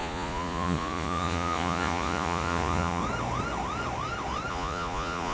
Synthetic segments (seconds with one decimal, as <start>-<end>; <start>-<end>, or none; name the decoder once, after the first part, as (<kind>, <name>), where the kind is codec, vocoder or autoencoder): 0.0-3.0 (vocoder, Vocos); 4.5-5.3